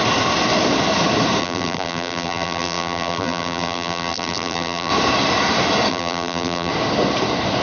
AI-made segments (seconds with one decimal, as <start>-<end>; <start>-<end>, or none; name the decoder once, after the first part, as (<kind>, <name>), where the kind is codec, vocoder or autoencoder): 1.4-4.9 (vocoder, BigVGAN v2); 5.9-6.7